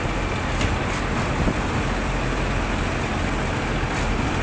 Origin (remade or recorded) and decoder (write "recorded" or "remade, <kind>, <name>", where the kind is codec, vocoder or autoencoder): recorded